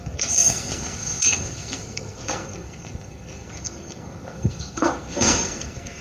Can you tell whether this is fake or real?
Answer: fake